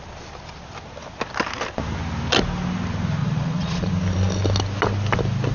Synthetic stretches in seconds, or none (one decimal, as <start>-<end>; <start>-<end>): 3.2-3.9

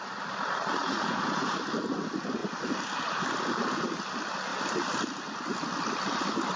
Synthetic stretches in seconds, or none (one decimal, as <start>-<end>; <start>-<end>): 0.8-1.5

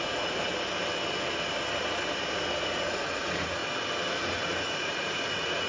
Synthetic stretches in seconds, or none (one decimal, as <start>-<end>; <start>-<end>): 0.0-0.5; 2.6-3.6; 4.1-5.7

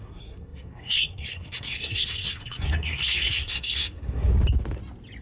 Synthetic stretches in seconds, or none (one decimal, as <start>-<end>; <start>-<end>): 0.0-4.3

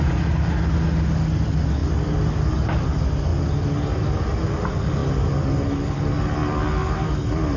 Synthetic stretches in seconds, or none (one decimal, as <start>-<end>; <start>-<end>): none

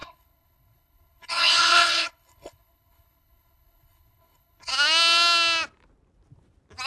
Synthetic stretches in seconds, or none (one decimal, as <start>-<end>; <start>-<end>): 0.0-4.7